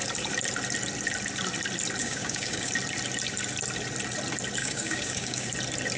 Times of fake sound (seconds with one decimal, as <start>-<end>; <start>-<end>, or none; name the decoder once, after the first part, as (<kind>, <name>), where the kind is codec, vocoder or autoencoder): 2.0-2.7 (codec, DAC); 4.6-5.5